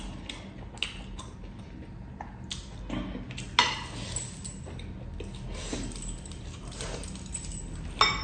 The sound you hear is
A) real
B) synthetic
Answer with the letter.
A